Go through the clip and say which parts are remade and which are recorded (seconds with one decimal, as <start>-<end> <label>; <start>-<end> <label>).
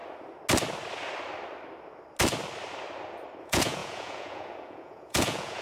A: 0.0-3.4 recorded; 3.4-5.6 remade